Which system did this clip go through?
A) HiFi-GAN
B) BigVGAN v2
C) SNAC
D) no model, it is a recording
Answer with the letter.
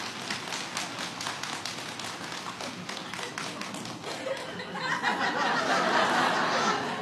D